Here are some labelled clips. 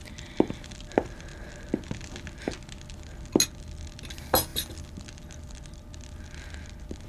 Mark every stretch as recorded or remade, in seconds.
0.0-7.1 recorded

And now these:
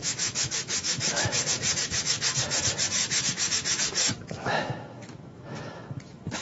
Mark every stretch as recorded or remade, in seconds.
0.0-2.6 remade; 2.6-3.0 recorded; 3.0-6.4 remade

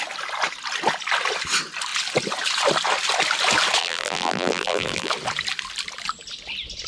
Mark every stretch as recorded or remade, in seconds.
0.0-3.8 recorded; 3.8-5.1 remade; 5.1-6.9 recorded

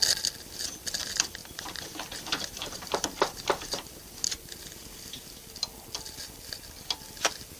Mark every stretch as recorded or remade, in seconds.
0.0-1.4 recorded; 1.4-4.1 remade; 4.1-7.6 recorded